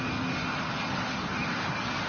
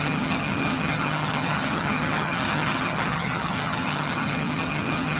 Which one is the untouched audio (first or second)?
first